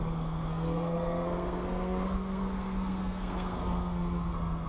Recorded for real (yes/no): no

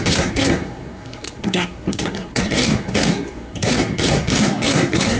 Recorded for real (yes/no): no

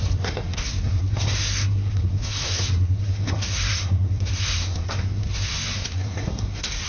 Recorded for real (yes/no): no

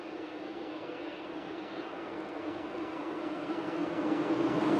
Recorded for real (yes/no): no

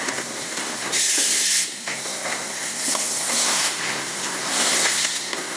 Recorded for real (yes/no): no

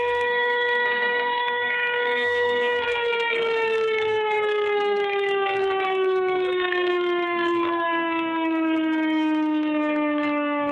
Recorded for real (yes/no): no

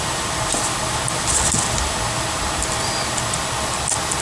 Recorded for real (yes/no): yes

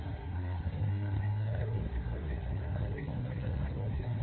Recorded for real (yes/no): no